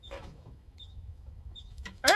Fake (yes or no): yes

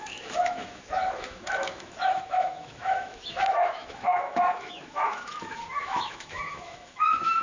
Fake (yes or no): yes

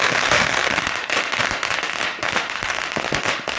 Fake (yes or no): yes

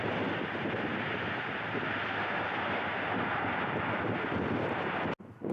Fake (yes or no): no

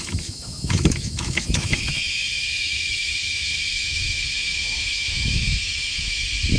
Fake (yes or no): yes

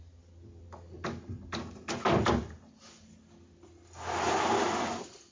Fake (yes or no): no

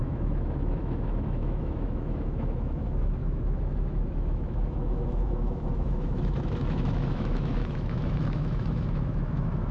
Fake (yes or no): yes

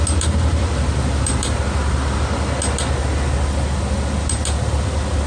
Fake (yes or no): no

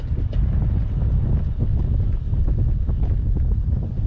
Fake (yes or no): no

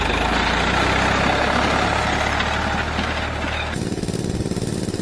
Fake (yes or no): no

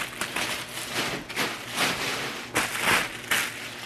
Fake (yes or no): no